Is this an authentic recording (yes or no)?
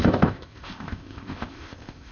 no